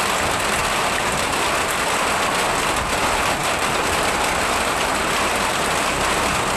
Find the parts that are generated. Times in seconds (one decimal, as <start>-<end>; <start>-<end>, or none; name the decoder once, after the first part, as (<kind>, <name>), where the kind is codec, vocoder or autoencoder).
none